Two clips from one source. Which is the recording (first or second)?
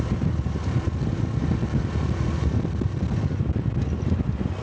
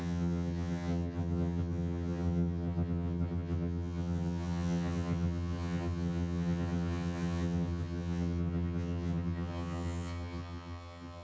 first